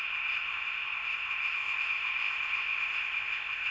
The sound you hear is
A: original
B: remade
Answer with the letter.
B